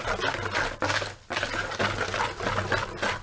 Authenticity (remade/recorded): recorded